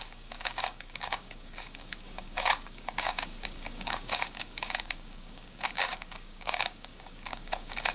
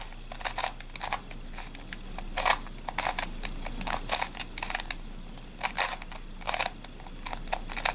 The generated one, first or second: first